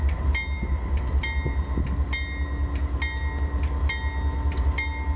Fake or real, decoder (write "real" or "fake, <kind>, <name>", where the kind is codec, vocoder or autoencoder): real